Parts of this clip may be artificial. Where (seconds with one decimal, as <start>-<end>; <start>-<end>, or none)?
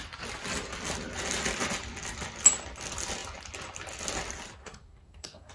4.6-5.5